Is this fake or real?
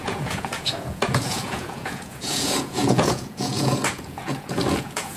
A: fake